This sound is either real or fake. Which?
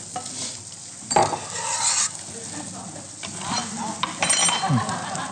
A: real